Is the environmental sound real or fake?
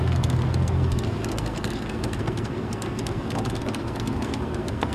fake